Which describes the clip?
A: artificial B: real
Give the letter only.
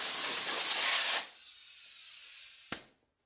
B